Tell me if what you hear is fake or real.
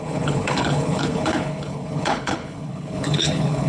fake